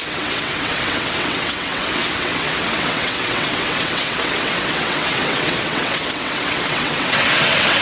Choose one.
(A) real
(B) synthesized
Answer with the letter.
B